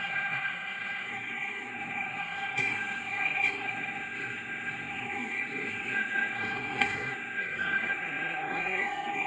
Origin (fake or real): fake